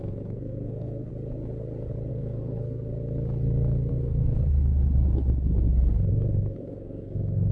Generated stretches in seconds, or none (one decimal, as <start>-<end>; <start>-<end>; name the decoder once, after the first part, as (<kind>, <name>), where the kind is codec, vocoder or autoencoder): 0.0-1.1 (codec, SNAC); 2.1-2.9; 3.9-4.3; 6.1-7.5